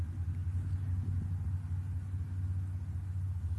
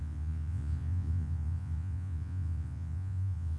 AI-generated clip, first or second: second